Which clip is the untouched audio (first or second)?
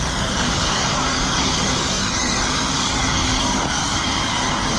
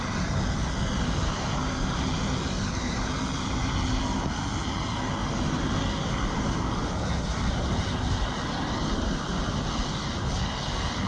second